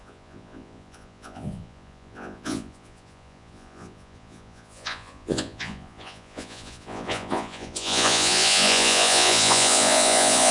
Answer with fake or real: fake